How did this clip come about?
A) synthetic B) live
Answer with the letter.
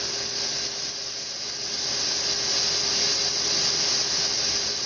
B